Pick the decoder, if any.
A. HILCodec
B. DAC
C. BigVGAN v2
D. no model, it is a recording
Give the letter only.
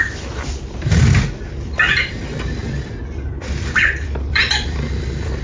C